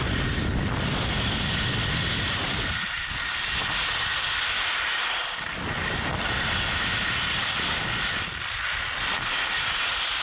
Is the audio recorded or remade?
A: recorded